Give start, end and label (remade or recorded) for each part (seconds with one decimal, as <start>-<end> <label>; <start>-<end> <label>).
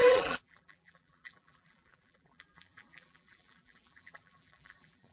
0.0-5.1 remade